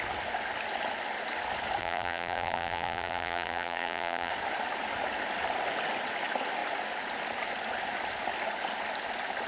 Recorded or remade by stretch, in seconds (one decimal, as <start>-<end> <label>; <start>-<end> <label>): 0.0-1.8 recorded; 1.8-4.3 remade; 4.3-9.5 recorded